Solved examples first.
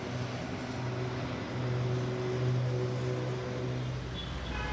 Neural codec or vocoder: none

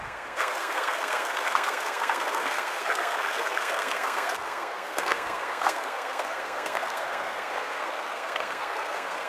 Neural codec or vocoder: codec, SNAC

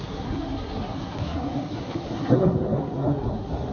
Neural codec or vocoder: codec, SNAC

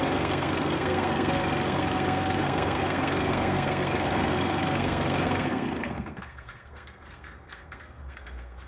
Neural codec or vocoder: codec, SNAC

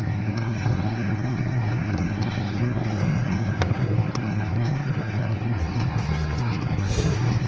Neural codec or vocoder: codec, SNAC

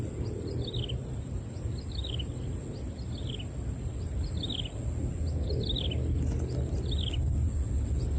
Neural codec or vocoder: none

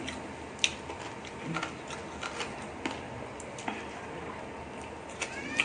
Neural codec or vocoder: none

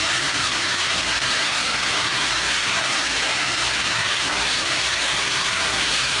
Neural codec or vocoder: codec, SNAC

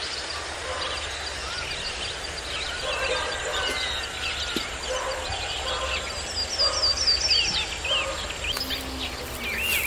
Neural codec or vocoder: none